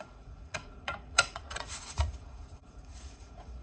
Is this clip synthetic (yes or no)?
yes